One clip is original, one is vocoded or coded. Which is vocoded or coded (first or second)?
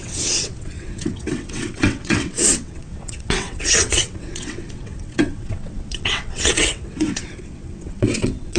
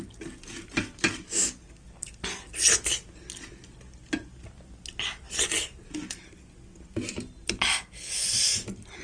first